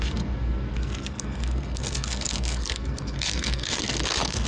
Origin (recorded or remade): remade